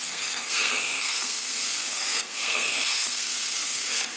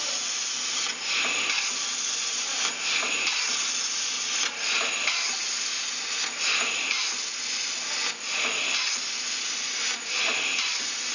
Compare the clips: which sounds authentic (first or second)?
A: second